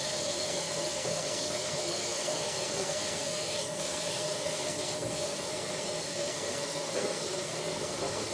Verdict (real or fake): fake